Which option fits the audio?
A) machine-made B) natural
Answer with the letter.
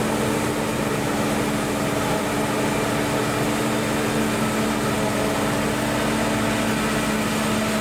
B